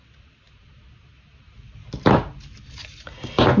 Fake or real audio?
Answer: real